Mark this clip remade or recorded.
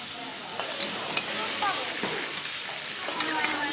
recorded